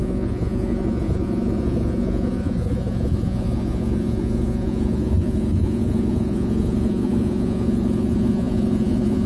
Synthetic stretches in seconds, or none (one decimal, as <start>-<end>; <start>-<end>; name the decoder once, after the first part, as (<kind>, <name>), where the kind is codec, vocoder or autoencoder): 0.0-9.3 (vocoder, Vocos)